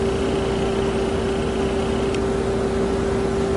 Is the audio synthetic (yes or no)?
no